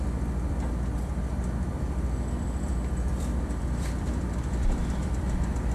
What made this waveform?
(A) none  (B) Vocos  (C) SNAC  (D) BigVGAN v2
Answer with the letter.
D